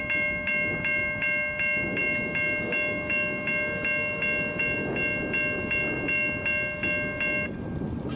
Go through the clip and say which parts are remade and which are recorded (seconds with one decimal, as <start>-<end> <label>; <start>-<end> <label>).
0.0-8.2 recorded